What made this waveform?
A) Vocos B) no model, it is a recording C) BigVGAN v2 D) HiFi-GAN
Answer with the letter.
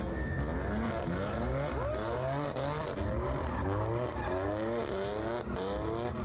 B